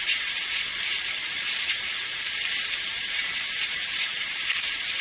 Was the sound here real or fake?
fake